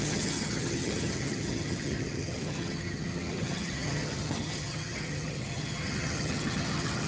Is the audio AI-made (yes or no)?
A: yes